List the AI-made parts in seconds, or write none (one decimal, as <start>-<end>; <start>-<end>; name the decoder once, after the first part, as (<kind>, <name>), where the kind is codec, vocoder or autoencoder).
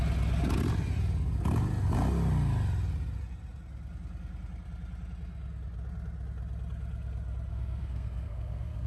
7.5-8.9 (codec, SNAC)